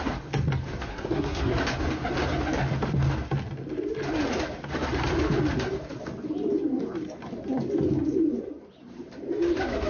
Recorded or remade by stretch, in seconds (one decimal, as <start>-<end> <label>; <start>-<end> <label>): 0.0-0.9 recorded; 0.9-1.6 remade; 1.6-9.9 recorded